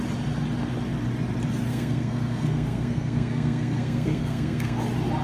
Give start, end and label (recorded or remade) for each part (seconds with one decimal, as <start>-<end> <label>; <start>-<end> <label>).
0.0-1.7 recorded; 1.7-4.8 remade; 4.8-5.2 recorded